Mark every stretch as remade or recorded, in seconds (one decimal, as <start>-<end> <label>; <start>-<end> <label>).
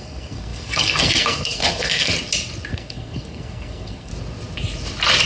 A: 0.0-2.1 remade; 2.1-2.7 recorded; 2.7-4.1 remade; 4.1-5.3 recorded